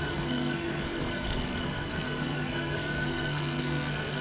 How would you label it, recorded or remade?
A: remade